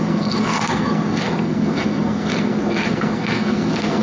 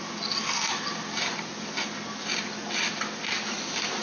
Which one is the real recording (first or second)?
second